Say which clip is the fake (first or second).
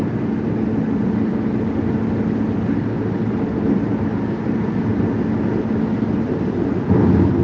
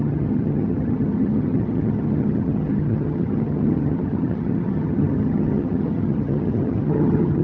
second